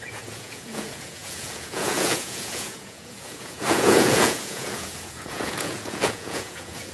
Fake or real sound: fake